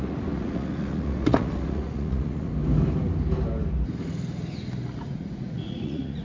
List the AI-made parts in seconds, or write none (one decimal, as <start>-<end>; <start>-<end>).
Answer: 0.0-2.5; 5.0-6.2